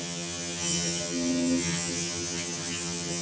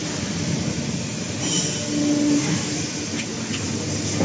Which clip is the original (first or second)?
second